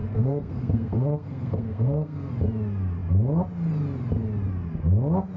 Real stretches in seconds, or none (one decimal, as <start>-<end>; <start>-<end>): 2.3-5.4